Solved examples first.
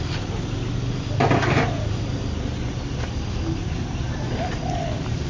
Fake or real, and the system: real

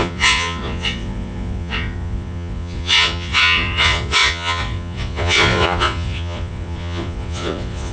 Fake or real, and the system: fake, vocoder, Vocos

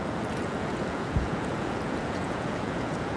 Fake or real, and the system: fake, vocoder, Vocos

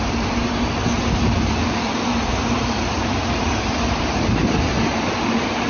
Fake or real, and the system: fake, vocoder, BigVGAN v2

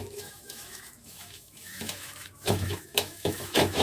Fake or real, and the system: fake, autoencoder, DAC-VAE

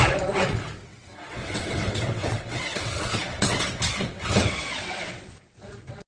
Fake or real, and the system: fake, vocoder, WaveNeXt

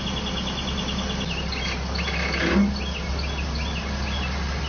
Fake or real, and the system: real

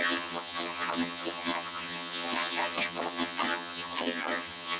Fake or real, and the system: fake, vocoder, HiFi-GAN